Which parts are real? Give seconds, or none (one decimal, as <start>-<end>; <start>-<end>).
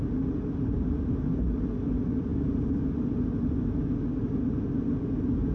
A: 0.0-5.5